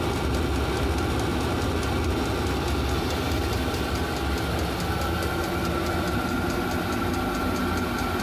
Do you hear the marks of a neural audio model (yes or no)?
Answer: no